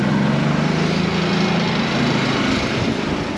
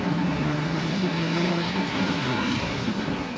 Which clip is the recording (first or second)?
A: first